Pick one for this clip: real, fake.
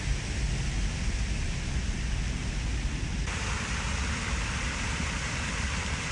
real